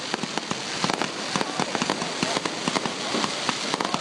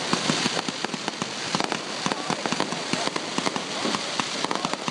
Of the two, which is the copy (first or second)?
second